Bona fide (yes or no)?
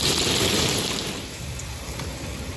yes